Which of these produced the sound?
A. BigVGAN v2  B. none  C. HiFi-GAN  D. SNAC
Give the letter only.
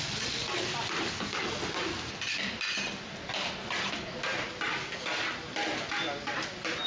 B